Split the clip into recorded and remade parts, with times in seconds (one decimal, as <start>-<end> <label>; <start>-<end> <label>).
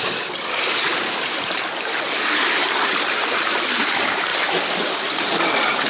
0.0-0.9 recorded; 0.9-3.8 remade; 3.8-5.9 recorded